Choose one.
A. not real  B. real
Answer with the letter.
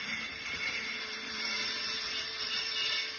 A